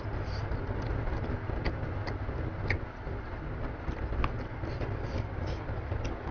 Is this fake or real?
real